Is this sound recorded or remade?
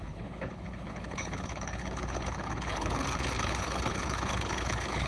remade